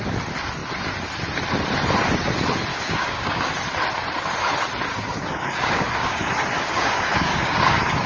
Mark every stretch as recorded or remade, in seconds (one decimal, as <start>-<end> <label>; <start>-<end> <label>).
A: 0.0-2.7 recorded; 2.7-3.5 remade; 3.5-4.9 recorded; 4.9-8.1 remade

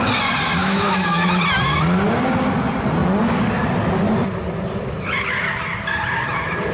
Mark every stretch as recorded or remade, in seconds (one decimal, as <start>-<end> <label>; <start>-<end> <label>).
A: 0.0-0.6 recorded; 0.6-1.4 remade; 1.4-6.7 recorded

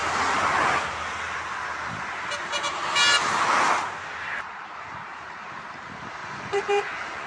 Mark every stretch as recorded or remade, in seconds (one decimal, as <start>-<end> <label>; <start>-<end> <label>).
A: 0.0-6.2 recorded; 6.2-7.3 remade